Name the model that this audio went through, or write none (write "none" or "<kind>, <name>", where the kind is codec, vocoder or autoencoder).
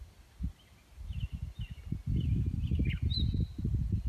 none